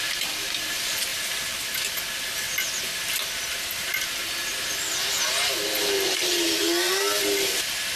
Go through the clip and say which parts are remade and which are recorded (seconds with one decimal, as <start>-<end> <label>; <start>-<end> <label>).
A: 0.0-8.0 recorded